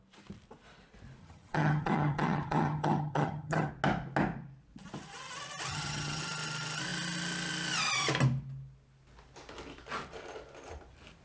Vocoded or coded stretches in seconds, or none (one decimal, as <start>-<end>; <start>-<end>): 1.2-3.7; 5.7-6.2